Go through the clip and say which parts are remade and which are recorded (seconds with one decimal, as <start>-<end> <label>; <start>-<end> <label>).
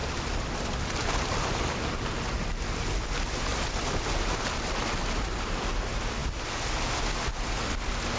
0.0-2.1 remade; 2.1-3.5 recorded; 3.5-4.8 remade; 4.8-8.2 recorded